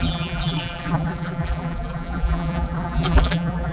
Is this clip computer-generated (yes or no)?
yes